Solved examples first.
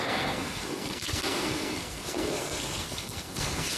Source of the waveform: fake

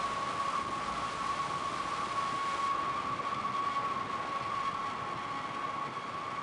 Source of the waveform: real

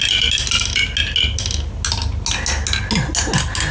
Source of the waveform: real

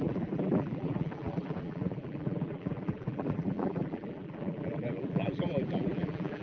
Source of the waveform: fake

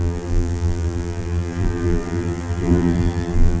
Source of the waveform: fake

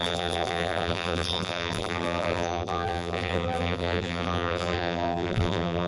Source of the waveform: fake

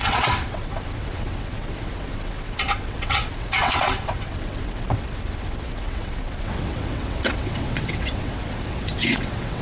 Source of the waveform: fake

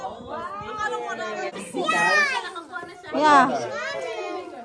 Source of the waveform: real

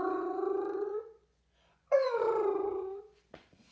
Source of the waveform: fake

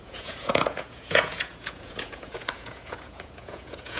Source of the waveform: fake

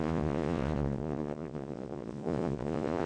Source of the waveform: fake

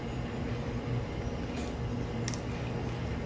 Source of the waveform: real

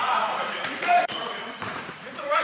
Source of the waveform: fake